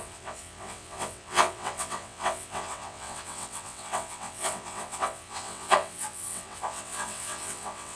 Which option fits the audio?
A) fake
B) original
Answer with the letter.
A